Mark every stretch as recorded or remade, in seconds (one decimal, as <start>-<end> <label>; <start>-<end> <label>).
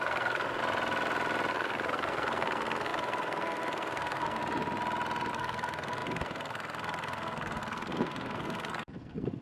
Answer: 0.0-0.6 remade; 0.6-1.5 recorded; 1.5-4.4 remade; 4.4-5.3 recorded; 5.3-9.4 remade